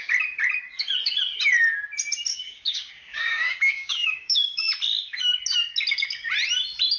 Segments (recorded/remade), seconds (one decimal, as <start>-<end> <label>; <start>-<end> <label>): 0.0-2.3 recorded; 2.3-4.6 remade; 4.6-7.0 recorded